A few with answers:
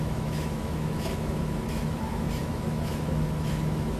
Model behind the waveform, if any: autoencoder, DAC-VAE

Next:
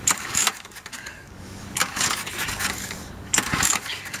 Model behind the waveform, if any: codec, DAC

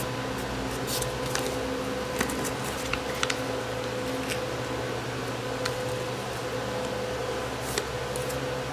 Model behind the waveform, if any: none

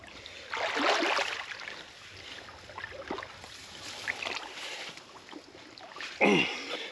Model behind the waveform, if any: none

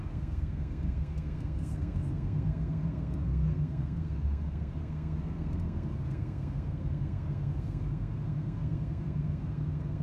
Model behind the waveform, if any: codec, SNAC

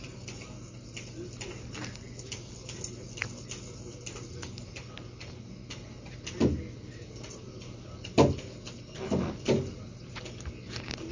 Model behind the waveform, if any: none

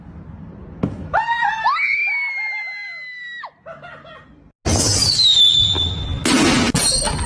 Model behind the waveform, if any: none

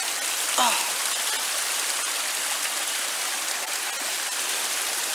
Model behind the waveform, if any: none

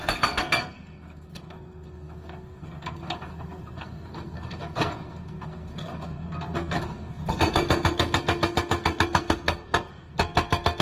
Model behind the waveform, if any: codec, SNAC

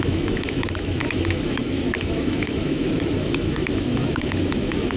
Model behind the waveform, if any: autoencoder, DAC-VAE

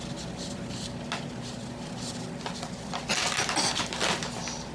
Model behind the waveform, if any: none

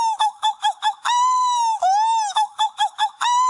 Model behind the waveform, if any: autoencoder, DAC-VAE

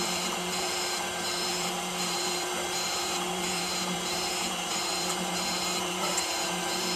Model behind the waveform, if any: vocoder, BigVGAN v2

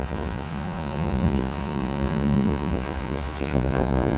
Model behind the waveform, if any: vocoder, Vocos